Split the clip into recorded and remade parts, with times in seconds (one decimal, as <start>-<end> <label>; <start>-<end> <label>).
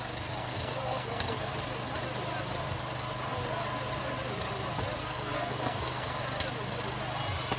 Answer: 0.0-0.4 recorded; 0.4-1.5 remade; 1.5-5.0 recorded; 5.0-6.2 remade; 6.2-7.6 recorded